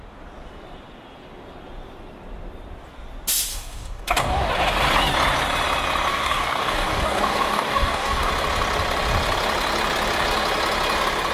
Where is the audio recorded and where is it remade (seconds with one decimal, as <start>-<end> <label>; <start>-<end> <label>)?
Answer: 0.0-3.5 recorded; 3.5-4.5 remade; 4.5-6.1 recorded; 6.1-8.3 remade; 8.3-11.3 recorded